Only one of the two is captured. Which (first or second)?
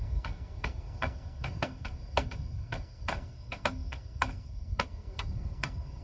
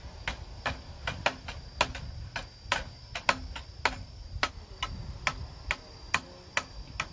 second